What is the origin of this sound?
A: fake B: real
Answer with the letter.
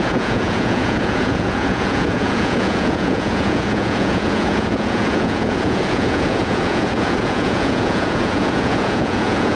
A